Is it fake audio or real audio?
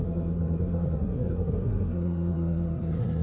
fake